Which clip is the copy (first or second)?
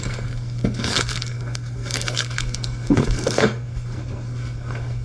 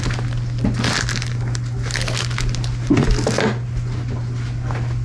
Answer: first